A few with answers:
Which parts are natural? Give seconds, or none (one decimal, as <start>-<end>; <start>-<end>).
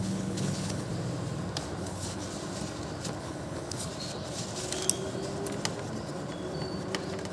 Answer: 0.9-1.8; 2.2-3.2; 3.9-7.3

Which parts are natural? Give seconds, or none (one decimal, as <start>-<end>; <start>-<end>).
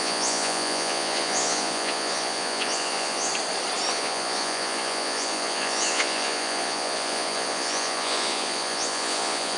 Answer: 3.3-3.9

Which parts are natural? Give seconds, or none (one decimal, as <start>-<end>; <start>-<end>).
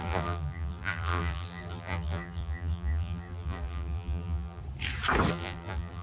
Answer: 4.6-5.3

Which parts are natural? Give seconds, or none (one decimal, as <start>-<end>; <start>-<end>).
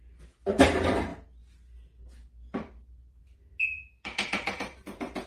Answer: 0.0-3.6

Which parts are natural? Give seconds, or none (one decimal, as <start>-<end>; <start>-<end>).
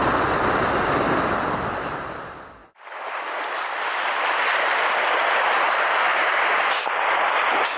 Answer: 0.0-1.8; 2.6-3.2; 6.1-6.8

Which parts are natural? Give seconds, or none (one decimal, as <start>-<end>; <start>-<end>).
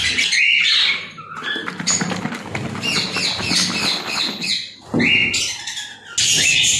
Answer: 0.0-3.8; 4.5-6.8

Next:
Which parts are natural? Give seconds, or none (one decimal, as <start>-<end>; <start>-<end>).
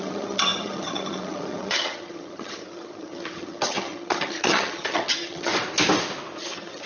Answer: 5.5-6.4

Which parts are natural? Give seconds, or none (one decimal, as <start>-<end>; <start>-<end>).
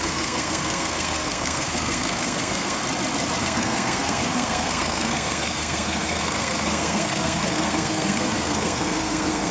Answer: 2.8-3.4